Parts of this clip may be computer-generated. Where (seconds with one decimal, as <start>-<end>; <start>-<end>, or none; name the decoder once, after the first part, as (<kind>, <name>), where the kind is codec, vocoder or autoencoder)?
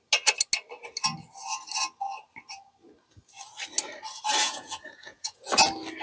4.4-5.5 (vocoder, Vocos)